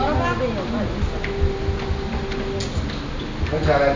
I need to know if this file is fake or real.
real